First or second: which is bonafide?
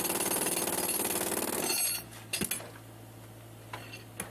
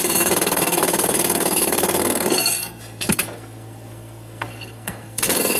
first